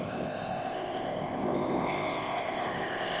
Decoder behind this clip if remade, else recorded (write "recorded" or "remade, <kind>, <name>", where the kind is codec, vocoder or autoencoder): remade, codec, ZipCodec